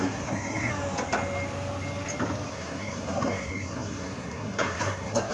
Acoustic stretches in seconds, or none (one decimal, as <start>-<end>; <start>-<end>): 0.7-2.5